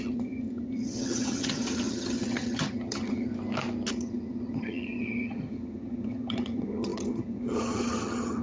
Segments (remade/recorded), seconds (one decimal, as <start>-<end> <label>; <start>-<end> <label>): 0.0-3.3 remade; 3.3-3.9 recorded; 3.9-8.4 remade